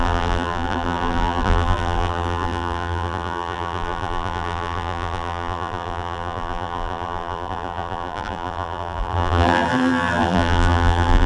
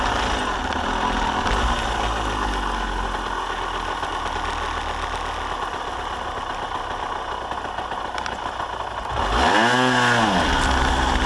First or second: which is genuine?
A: second